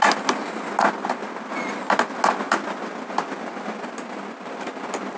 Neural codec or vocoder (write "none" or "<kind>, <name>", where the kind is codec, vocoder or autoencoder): none